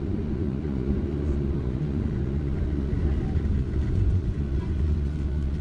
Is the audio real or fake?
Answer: fake